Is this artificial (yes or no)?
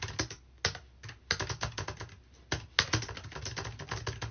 no